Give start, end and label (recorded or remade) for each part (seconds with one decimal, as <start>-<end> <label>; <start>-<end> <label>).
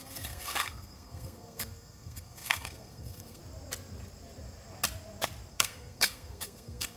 0.0-3.4 remade; 3.4-5.5 recorded; 5.5-7.0 remade